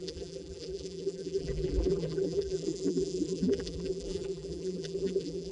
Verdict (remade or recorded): remade